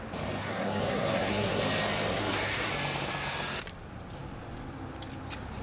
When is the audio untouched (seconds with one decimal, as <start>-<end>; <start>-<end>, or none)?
0.0-0.4; 1.6-2.1; 2.7-5.6